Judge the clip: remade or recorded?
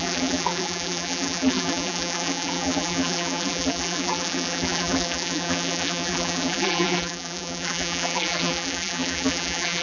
remade